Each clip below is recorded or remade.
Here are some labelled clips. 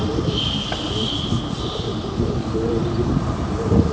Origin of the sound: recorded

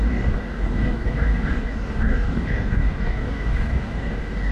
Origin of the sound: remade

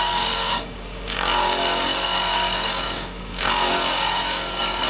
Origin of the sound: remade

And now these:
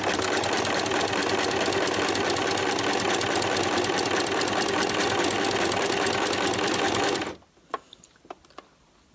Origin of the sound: recorded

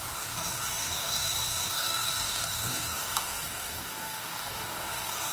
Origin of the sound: remade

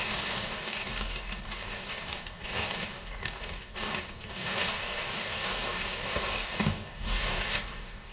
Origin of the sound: remade